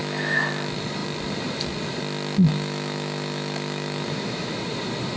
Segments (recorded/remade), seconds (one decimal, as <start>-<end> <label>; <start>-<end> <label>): 0.0-0.5 remade; 0.5-2.5 recorded; 2.5-4.5 remade; 4.5-5.2 recorded